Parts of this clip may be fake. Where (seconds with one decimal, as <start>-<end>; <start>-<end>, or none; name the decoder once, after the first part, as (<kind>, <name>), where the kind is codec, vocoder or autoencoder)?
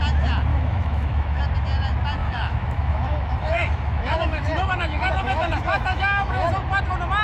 0.5-1.4 (autoencoder, DAC-VAE); 2.2-6.5